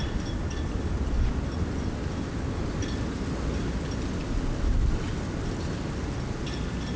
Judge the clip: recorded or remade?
recorded